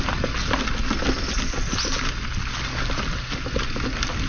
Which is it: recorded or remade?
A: recorded